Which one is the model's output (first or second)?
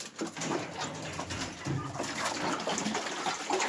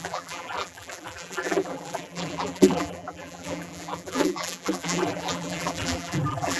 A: second